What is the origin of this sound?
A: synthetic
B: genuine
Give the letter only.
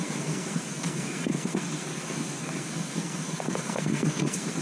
A